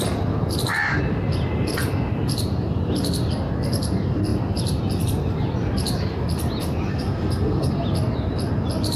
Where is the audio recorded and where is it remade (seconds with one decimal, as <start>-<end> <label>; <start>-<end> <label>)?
0.0-6.9 recorded; 6.9-7.7 remade; 7.7-9.0 recorded